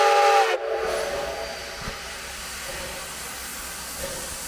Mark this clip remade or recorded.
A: recorded